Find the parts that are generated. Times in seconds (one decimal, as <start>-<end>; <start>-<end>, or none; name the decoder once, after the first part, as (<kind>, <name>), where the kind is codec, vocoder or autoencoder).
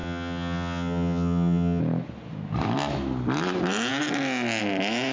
0.0-1.8 (vocoder, HiFi-GAN)